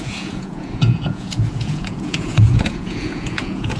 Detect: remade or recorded remade